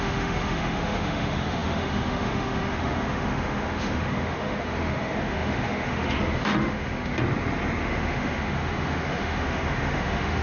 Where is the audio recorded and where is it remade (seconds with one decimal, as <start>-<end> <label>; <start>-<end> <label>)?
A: 0.0-7.1 remade; 7.1-7.8 recorded; 7.8-10.4 remade